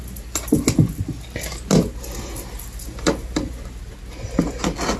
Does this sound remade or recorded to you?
recorded